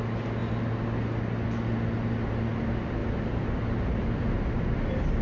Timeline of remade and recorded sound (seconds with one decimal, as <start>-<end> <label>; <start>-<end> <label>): 0.0-5.2 recorded